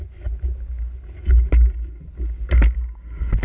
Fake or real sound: real